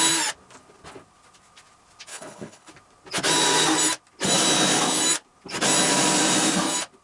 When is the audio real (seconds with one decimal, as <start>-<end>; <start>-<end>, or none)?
0.0-2.1; 2.7-7.0